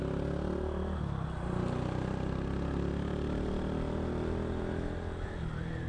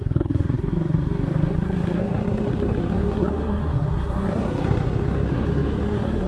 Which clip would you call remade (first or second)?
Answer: second